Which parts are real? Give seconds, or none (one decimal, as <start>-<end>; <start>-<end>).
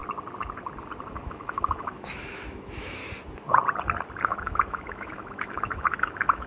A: 0.0-1.1; 3.0-4.2